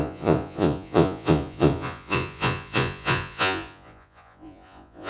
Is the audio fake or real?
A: fake